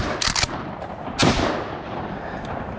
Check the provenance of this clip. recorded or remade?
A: recorded